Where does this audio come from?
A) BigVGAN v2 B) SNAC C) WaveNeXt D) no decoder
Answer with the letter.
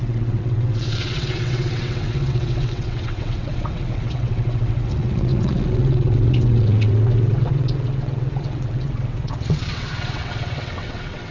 C